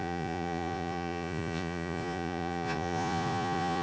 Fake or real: fake